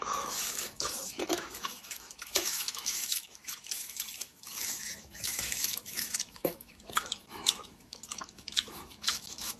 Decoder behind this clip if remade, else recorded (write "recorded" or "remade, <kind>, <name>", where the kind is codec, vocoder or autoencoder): remade, autoencoder, DAC-VAE